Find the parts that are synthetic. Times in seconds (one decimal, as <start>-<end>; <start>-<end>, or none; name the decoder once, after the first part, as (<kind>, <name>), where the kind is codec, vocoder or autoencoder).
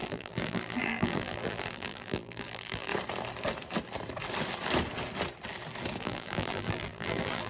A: 0.0-2.9 (vocoder, BigVGAN v2); 6.0-7.5